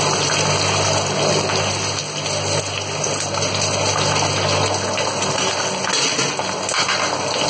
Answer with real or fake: real